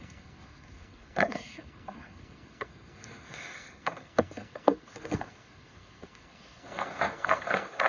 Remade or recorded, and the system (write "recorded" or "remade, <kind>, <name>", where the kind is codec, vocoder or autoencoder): remade, codec, SNAC